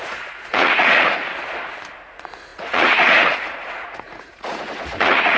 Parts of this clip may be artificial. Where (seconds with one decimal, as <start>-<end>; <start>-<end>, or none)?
0.0-1.2; 2.0-5.4